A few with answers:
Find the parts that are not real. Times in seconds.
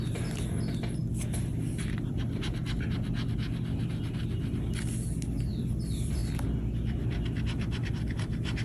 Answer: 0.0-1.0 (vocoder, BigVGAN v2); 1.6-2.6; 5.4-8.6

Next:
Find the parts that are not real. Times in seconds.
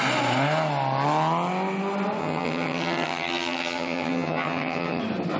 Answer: 2.2-5.0 (vocoder, HiFi-GAN)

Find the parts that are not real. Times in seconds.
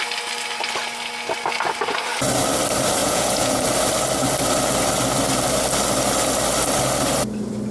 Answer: 3.0-3.6 (vocoder, Vocos)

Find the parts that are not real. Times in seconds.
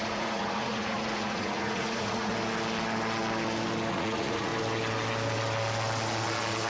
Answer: 0.0-2.3 (vocoder, Vocos); 3.9-4.5